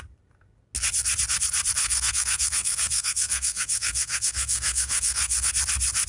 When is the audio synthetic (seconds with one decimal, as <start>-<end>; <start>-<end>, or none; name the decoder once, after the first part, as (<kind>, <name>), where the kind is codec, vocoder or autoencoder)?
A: 1.8-5.5 (codec, SNAC)